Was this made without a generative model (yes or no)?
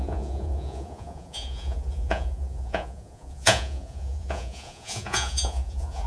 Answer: no